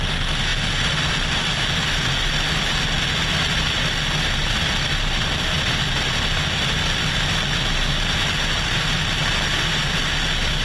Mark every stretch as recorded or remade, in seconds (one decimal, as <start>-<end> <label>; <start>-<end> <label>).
0.0-10.6 recorded